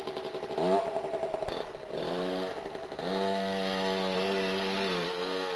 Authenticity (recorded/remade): remade